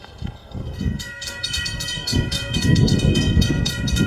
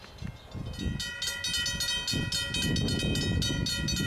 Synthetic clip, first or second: first